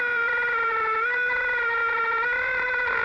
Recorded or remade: remade